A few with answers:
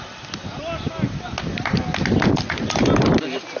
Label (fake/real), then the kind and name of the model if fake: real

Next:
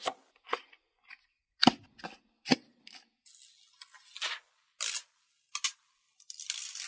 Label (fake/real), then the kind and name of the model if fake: real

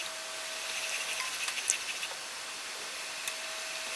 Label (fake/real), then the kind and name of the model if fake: real